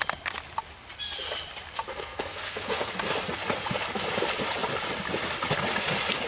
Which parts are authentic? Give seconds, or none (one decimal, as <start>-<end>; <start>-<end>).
0.0-1.9; 2.9-6.3